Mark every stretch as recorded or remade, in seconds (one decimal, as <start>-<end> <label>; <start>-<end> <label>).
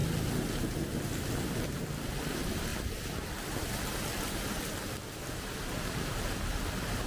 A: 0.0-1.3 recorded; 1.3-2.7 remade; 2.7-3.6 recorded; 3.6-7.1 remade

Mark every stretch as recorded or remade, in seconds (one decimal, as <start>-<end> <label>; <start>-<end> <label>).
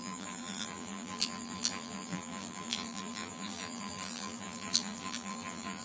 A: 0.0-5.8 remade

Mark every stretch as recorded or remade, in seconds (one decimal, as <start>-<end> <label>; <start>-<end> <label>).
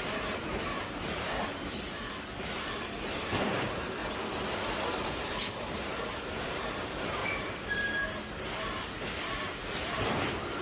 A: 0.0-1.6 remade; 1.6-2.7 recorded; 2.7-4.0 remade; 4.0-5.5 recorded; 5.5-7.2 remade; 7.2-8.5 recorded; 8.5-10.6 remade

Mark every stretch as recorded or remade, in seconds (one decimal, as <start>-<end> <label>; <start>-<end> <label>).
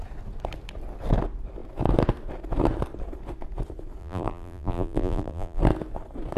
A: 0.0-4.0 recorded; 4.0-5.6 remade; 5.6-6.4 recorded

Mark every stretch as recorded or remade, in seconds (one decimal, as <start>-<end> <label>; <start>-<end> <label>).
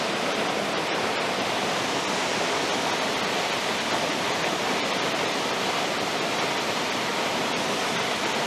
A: 0.0-2.3 recorded; 2.3-2.9 remade; 2.9-7.1 recorded; 7.1-7.9 remade; 7.9-8.5 recorded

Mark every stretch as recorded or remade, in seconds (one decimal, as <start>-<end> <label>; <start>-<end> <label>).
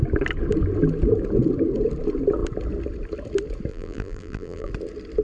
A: 0.0-3.7 recorded; 3.7-4.7 remade; 4.7-5.2 recorded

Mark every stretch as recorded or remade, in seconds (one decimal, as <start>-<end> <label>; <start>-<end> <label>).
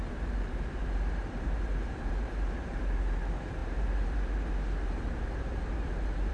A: 0.0-6.3 remade